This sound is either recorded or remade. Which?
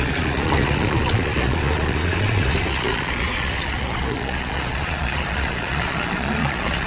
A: remade